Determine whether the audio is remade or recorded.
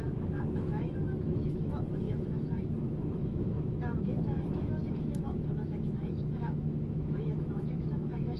remade